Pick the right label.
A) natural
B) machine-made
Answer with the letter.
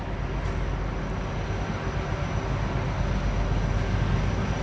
A